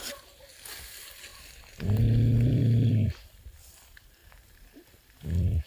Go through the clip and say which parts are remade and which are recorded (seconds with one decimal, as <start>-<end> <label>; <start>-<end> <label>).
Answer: 0.0-4.2 recorded; 4.2-5.7 remade

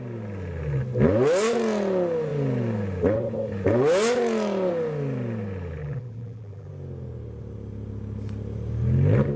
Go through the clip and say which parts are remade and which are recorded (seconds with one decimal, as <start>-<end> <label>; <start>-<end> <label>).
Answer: 0.0-5.8 recorded; 5.8-6.7 remade; 6.7-9.4 recorded